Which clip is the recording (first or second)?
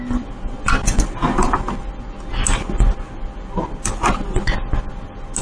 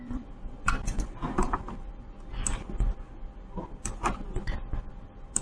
first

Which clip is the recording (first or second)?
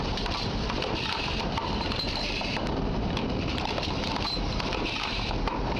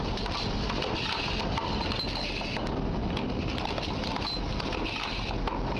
second